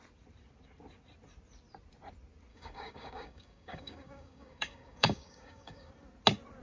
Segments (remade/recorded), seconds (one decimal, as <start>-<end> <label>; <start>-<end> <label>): 0.0-2.5 recorded; 2.5-5.9 remade; 5.9-6.6 recorded